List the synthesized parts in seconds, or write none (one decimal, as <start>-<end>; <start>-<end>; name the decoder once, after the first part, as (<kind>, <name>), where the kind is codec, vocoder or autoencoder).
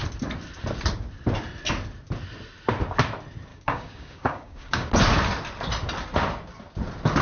3.5-4.9 (codec, DAC)